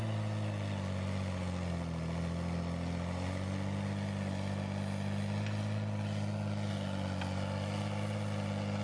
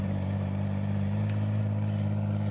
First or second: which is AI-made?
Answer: second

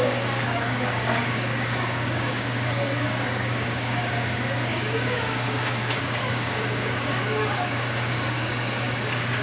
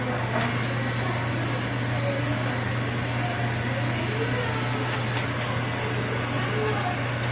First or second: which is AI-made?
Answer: first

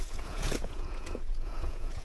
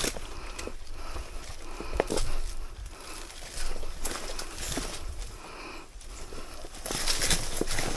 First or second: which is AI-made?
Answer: first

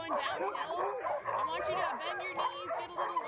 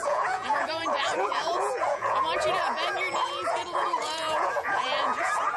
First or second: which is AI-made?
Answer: second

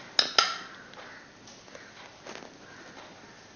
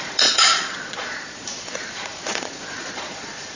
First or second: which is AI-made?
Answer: second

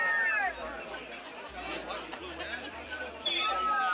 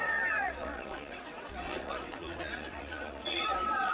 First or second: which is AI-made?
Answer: second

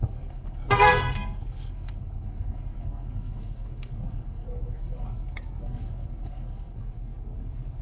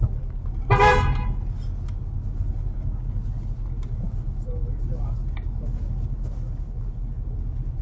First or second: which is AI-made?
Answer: first